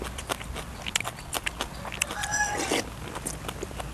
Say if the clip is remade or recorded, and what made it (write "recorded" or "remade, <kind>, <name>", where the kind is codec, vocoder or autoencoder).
recorded